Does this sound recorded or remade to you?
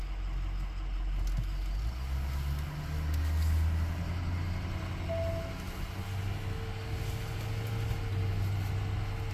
recorded